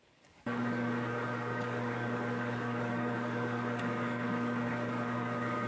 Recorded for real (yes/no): no